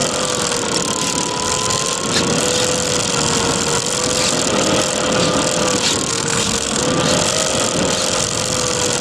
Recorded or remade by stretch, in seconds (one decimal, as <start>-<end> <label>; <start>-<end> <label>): 0.0-6.1 recorded; 6.1-6.8 remade; 6.8-9.0 recorded